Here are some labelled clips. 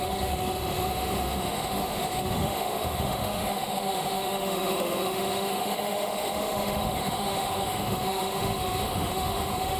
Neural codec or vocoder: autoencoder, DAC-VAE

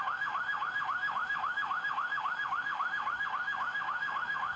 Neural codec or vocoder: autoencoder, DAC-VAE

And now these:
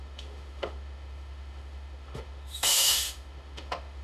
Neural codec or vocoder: autoencoder, DAC-VAE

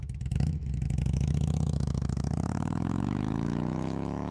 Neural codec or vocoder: autoencoder, DAC-VAE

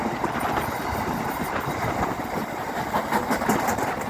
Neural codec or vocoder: none